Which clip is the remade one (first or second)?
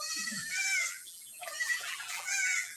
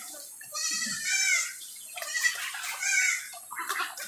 first